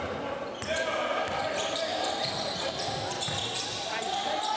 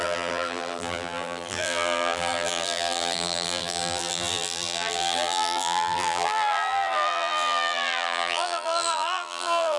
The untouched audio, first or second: first